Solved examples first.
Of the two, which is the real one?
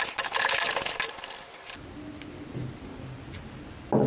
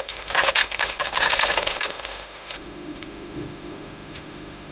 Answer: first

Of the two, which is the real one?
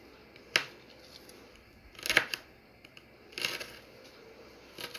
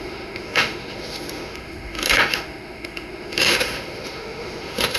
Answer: first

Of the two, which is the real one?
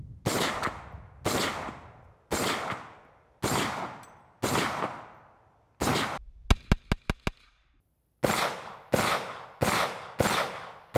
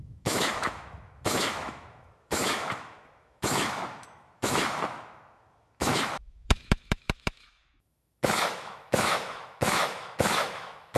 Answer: first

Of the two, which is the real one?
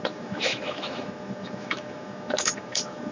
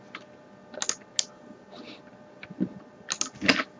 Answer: second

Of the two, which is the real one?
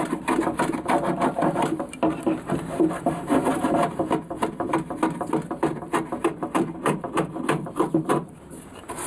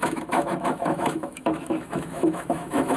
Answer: first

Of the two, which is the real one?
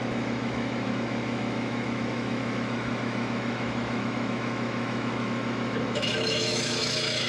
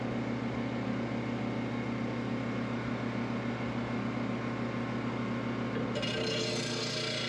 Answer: second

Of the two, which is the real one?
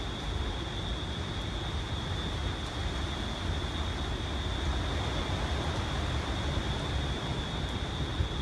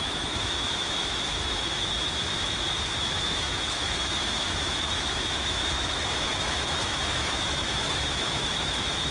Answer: first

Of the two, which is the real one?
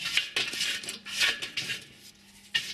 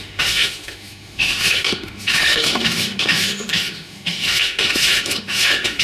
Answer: first